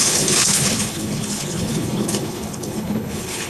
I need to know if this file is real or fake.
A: fake